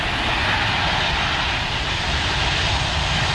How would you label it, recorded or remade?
recorded